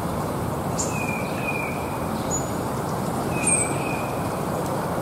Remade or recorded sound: remade